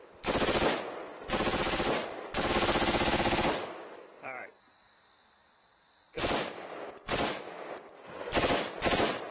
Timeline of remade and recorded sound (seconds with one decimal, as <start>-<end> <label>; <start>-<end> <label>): 0.0-1.1 recorded; 1.1-2.5 remade; 2.5-3.6 recorded; 3.6-8.2 remade; 8.2-9.3 recorded